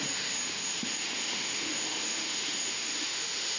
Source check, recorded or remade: remade